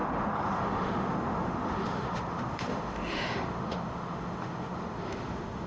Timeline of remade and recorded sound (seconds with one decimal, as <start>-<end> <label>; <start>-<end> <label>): 0.0-5.7 remade